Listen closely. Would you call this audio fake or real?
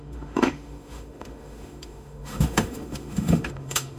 fake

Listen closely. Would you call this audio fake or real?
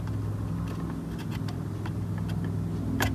real